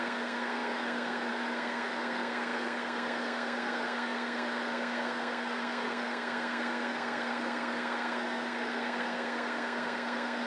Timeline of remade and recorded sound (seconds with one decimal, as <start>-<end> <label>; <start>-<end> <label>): 0.0-10.5 remade